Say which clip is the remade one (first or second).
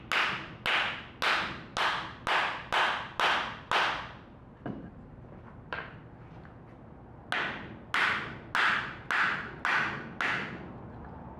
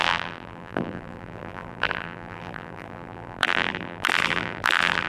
second